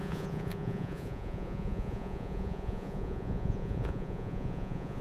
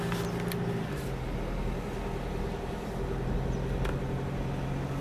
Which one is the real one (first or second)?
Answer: second